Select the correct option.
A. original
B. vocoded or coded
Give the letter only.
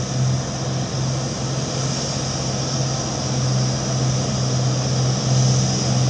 A